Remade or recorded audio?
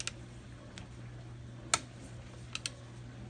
recorded